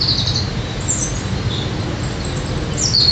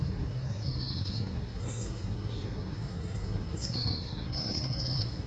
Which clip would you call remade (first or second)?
second